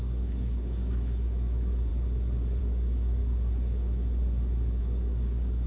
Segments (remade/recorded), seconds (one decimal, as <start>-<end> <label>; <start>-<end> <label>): 0.0-1.9 remade; 1.9-2.6 recorded; 2.6-3.2 remade; 3.2-4.8 recorded; 4.8-5.7 remade